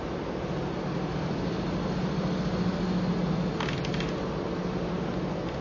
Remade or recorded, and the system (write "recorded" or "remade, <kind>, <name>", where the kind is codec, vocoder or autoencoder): recorded